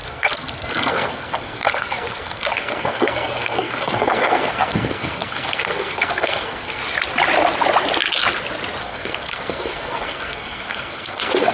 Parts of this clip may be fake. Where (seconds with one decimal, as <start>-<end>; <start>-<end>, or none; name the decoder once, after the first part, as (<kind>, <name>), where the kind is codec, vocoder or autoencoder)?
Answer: 0.0-6.8 (codec, SNAC); 8.8-11.5